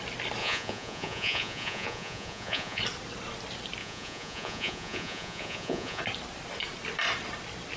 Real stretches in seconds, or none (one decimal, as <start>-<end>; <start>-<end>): 0.0-0.4; 2.8-3.8; 6.0-7.8